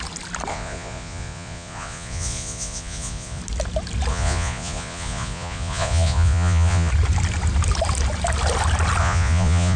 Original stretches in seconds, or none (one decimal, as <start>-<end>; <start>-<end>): 0.0-0.5; 3.4-4.1; 6.9-9.0